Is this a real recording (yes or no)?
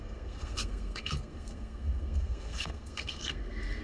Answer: no